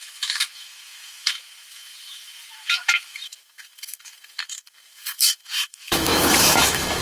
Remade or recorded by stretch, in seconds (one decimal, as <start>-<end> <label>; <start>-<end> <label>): 0.0-7.0 remade